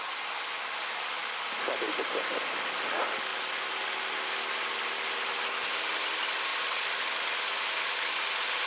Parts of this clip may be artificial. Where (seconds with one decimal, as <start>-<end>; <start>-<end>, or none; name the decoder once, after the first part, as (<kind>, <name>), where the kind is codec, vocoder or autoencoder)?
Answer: 1.2-1.9 (vocoder, BigVGAN v2); 6.5-7.2